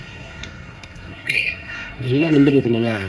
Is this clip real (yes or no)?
no